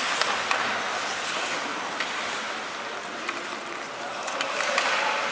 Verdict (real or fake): real